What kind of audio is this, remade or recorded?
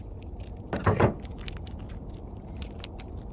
recorded